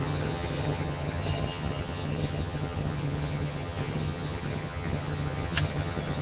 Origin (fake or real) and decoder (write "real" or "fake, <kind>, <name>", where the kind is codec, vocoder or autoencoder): fake, vocoder, HiFi-GAN